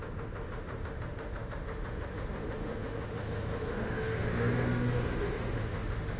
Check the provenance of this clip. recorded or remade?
remade